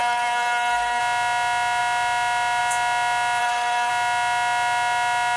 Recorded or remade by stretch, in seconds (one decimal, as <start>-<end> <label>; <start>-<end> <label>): 0.0-1.0 remade; 1.0-3.4 recorded; 3.4-3.9 remade; 3.9-5.4 recorded